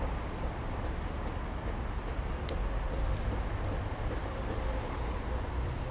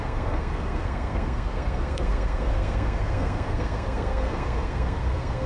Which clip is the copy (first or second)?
second